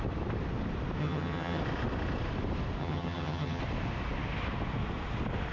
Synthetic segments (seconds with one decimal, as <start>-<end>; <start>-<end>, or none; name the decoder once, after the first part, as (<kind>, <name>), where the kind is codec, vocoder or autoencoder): 1.0-1.6 (vocoder, HiFi-GAN); 2.8-3.6